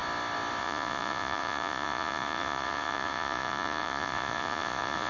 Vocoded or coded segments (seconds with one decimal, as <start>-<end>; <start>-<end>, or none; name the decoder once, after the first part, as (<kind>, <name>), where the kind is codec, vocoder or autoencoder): 0.6-5.1 (vocoder, Vocos)